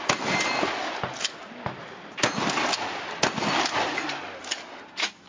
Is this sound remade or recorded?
recorded